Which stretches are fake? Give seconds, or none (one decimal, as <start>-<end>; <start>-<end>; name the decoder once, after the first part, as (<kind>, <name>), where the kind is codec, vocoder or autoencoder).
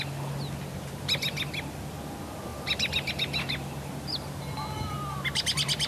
none